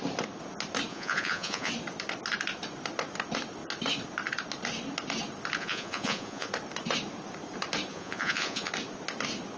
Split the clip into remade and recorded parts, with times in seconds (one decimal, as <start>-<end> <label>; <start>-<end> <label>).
0.0-0.9 recorded; 0.9-1.7 remade; 1.7-5.6 recorded; 5.6-6.5 remade; 6.5-7.9 recorded; 7.9-8.7 remade; 8.7-9.6 recorded